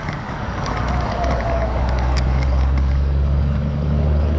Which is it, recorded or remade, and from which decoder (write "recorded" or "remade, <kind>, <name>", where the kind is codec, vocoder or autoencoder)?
remade, codec, DAC